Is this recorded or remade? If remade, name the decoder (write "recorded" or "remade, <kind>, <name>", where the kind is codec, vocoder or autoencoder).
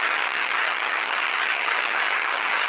remade, vocoder, HiFi-GAN